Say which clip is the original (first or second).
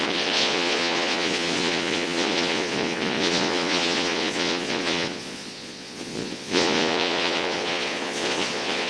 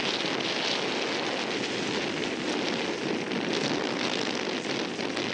second